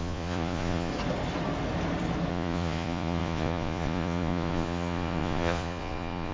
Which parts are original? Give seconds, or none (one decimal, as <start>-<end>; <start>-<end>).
0.9-2.3